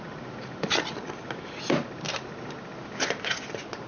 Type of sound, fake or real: real